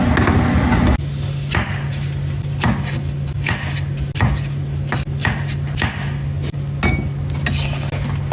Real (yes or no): yes